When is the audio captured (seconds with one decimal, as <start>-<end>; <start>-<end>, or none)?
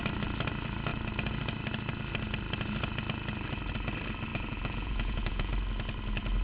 0.0-4.3; 5.5-6.4